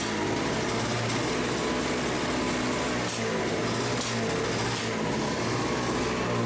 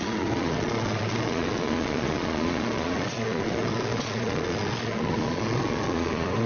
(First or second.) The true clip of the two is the first